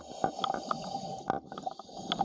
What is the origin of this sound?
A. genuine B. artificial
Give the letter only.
A